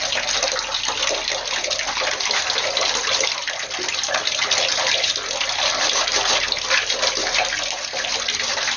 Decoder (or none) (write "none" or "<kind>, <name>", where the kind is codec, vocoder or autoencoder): none